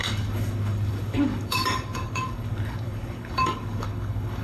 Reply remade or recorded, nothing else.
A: remade